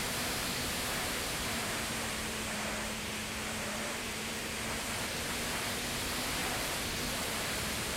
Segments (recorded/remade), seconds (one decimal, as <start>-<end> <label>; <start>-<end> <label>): 0.0-0.4 recorded; 0.4-2.7 remade; 2.7-3.2 recorded; 3.2-4.4 remade; 4.4-6.4 recorded; 6.4-8.0 remade